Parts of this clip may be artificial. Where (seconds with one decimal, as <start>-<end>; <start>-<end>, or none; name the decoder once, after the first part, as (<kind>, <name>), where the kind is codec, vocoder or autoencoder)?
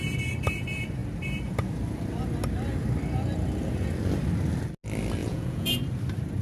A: 5.2-5.8 (vocoder, Vocos)